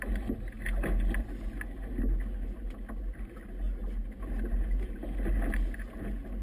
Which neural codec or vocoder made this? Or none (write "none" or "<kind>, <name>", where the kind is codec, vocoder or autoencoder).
none